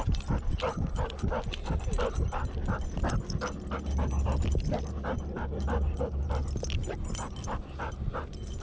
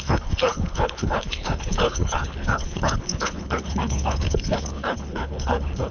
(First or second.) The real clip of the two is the first